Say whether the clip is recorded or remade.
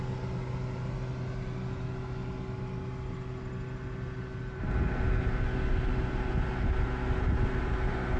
recorded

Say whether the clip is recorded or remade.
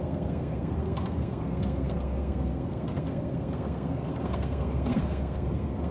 remade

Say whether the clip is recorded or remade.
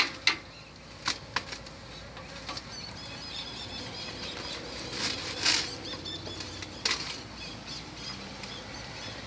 recorded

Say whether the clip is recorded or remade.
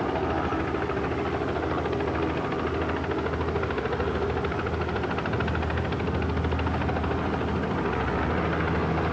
recorded